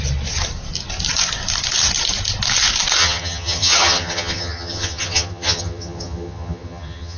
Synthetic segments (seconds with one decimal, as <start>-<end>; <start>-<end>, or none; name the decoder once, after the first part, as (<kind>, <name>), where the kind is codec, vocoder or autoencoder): 3.0-7.2 (vocoder, HiFi-GAN)